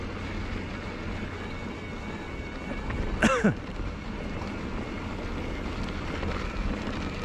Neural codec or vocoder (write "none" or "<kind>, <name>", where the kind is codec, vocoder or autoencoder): none